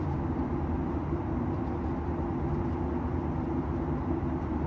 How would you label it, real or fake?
real